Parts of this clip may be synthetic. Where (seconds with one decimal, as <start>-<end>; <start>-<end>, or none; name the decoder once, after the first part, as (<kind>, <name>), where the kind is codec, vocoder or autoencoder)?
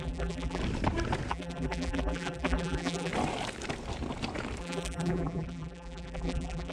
0.0-0.6 (vocoder, BigVGAN v2); 1.3-3.1; 4.6-6.7